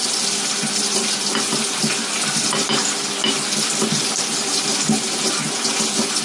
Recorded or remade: recorded